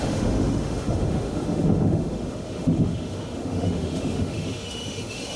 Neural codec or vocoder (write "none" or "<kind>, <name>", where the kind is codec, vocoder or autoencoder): autoencoder, DAC-VAE